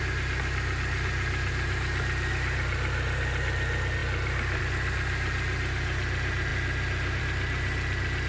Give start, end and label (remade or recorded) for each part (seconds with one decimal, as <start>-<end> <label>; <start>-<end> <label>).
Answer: 0.0-8.3 recorded